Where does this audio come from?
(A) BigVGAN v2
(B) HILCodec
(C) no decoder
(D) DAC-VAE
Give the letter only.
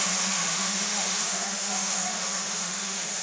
D